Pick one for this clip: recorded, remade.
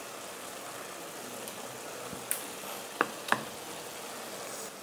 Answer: recorded